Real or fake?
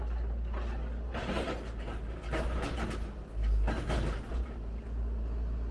real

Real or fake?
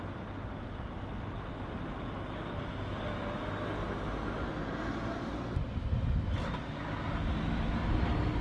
real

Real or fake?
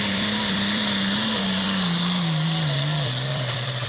fake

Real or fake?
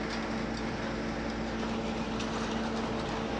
real